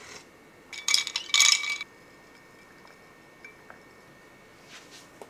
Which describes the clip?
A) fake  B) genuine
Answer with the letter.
B